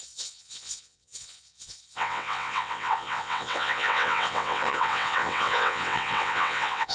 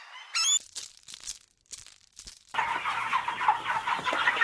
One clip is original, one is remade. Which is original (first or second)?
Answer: second